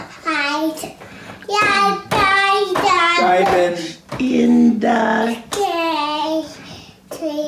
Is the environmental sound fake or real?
real